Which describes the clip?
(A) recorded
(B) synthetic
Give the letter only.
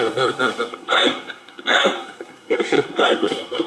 B